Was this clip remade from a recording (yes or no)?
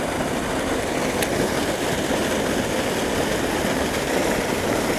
no